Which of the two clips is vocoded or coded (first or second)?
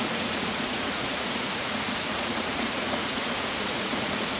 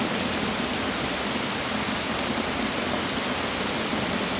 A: first